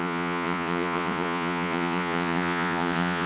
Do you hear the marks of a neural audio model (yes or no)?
yes